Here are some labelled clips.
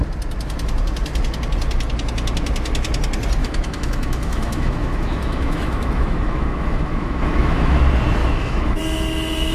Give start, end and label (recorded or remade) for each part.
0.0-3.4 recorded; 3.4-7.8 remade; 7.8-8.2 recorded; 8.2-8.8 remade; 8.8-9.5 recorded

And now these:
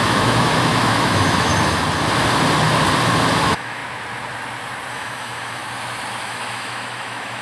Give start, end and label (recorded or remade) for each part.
0.0-1.5 remade; 1.5-3.3 recorded; 3.3-3.8 remade; 3.8-4.9 recorded; 4.9-5.6 remade; 5.6-6.2 recorded; 6.2-7.4 remade

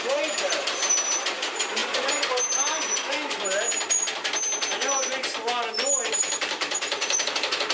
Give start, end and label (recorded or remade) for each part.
0.0-1.8 remade; 1.8-6.1 recorded; 6.1-7.7 remade

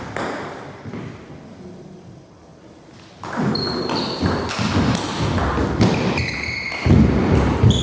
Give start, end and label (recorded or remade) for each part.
0.0-7.8 recorded